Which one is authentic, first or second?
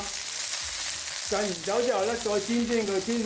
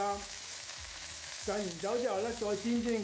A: first